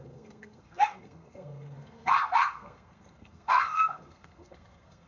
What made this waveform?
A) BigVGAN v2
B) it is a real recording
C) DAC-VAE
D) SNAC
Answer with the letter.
D